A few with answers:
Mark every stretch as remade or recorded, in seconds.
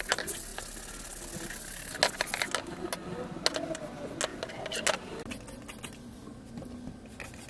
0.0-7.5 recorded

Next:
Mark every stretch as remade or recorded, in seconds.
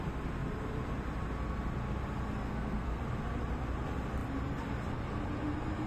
0.0-2.5 recorded; 2.5-3.0 remade; 3.0-5.9 recorded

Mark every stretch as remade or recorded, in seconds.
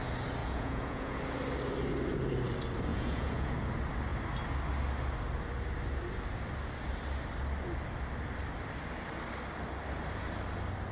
0.0-0.4 recorded; 0.4-1.2 remade; 1.2-2.9 recorded; 2.9-3.5 remade; 3.5-10.9 recorded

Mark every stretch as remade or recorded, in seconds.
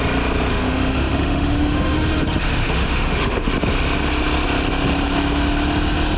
0.0-0.5 recorded; 0.5-3.5 remade; 3.5-6.2 recorded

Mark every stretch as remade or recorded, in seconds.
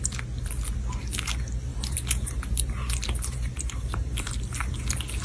0.0-1.7 recorded; 1.7-4.4 remade; 4.4-5.2 recorded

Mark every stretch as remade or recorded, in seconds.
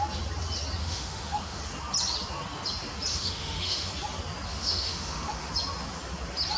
0.0-0.8 recorded; 0.8-1.6 remade; 1.6-3.1 recorded; 3.1-3.9 remade; 3.9-4.5 recorded; 4.5-5.5 remade; 5.5-6.6 recorded